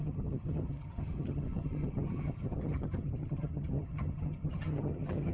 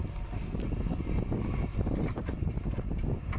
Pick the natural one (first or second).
second